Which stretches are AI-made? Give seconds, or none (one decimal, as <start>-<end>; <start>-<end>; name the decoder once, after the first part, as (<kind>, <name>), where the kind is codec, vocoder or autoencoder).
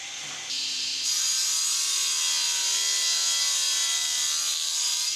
none